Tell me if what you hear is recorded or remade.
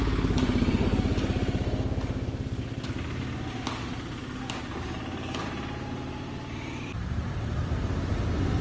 recorded